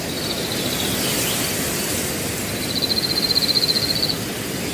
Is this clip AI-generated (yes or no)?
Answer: no